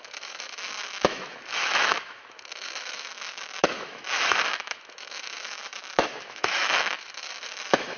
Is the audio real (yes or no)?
no